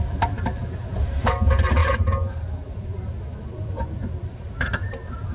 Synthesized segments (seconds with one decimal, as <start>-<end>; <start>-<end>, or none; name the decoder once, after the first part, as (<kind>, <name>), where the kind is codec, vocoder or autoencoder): 0.0-5.3 (vocoder, BigVGAN v2)